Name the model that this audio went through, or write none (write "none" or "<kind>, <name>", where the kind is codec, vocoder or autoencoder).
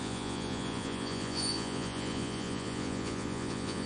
vocoder, Vocos